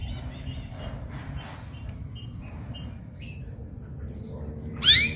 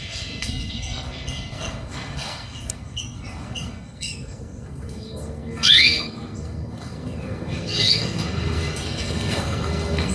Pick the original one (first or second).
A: first